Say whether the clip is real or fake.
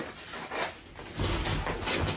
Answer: real